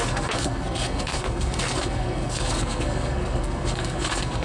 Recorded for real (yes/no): no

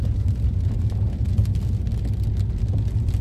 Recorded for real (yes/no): yes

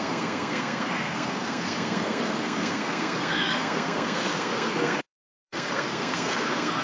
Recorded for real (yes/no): no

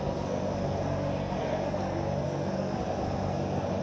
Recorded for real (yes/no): no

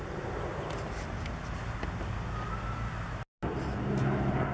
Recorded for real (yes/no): yes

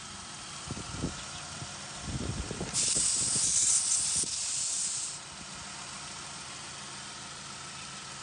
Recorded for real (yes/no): yes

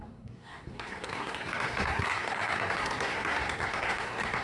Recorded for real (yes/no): no